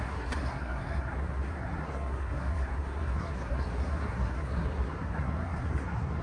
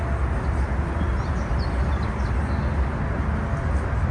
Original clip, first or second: second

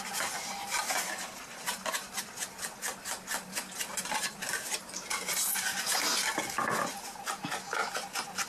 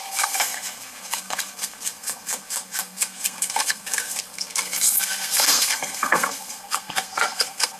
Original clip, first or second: first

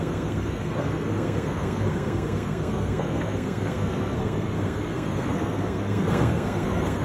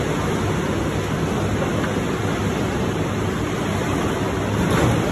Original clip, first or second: second